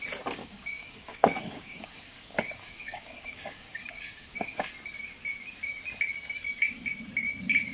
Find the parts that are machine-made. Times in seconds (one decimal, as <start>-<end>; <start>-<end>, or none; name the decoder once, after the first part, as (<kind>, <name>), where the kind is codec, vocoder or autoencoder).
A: 0.4-4.7 (codec, DAC)